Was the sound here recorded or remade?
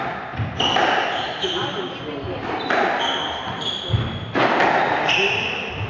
recorded